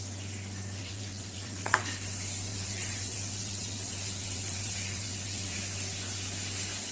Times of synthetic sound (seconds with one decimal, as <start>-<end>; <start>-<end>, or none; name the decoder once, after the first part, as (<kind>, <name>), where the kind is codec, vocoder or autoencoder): 0.8-1.8 (vocoder, WaveNeXt); 2.5-5.6